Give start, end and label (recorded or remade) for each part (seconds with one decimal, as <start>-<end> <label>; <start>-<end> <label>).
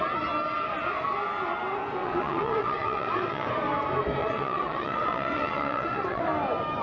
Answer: 0.0-2.0 recorded; 2.0-3.5 remade; 3.5-4.2 recorded; 4.2-6.2 remade; 6.2-6.8 recorded